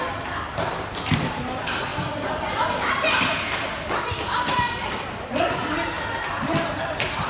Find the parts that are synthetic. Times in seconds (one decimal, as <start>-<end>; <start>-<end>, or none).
0.0-7.3

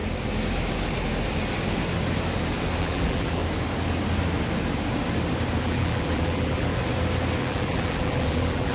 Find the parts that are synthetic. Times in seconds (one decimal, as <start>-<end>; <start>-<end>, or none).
2.8-3.4; 5.6-6.7; 7.4-8.7

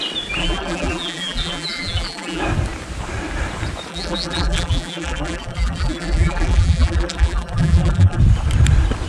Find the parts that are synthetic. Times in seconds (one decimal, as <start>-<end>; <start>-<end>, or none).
0.4-2.4; 3.9-8.2

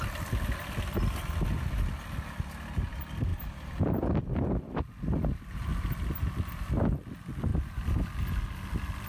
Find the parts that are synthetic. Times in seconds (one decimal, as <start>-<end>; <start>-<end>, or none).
3.3-4.3; 7.5-8.0

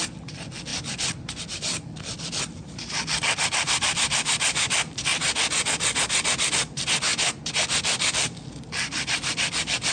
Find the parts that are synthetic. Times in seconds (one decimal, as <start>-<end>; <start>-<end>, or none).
0.0-0.7; 1.4-5.1; 6.5-7.1; 8.1-9.9

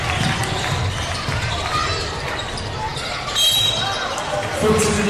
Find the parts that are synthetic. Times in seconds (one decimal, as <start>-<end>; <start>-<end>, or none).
0.0-5.1

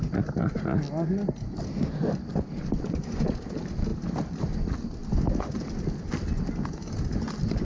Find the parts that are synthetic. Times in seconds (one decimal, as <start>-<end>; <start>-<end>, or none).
none